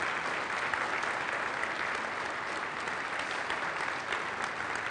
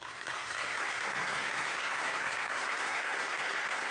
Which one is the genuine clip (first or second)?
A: first